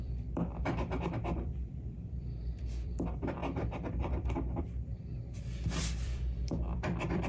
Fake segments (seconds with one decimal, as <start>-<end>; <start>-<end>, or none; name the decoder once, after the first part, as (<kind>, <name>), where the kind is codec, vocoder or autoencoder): 0.0-3.4 (vocoder, BigVGAN v2); 4.6-7.3